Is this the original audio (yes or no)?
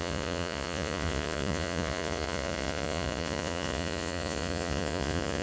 no